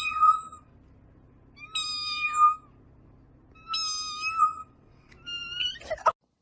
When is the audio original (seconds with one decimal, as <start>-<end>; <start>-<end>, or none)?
0.7-4.4; 5.1-6.4